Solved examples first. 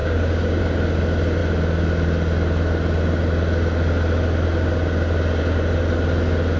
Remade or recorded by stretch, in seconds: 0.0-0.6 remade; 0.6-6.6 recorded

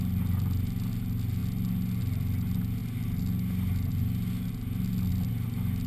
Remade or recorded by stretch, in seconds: 0.0-5.9 recorded

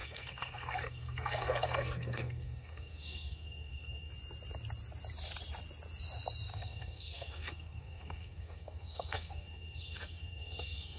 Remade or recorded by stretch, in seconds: 0.0-4.1 remade; 4.1-6.5 recorded; 6.5-11.0 remade

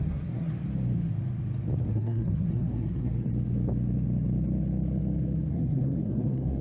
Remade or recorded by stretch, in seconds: 0.0-0.5 remade; 0.5-1.8 recorded; 1.8-3.3 remade; 3.3-5.5 recorded; 5.5-6.6 remade

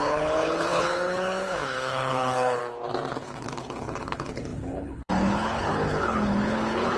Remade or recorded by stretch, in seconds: 0.0-2.6 remade; 2.6-3.1 recorded; 3.1-7.0 remade